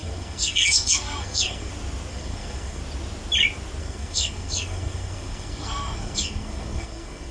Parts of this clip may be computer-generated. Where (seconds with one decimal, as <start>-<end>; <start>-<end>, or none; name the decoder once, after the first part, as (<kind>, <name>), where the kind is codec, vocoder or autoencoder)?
0.0-1.7 (codec, SNAC); 2.1-2.8; 3.8-7.3